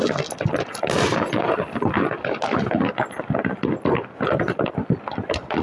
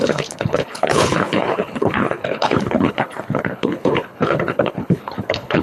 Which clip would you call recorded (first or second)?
first